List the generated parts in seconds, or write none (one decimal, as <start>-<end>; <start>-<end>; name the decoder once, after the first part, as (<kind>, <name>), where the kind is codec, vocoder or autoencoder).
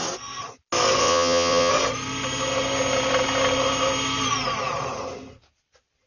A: 1.0-1.7 (vocoder, WaveNeXt)